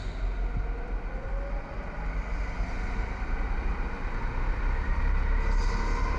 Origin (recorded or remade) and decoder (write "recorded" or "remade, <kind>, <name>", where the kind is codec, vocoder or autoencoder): recorded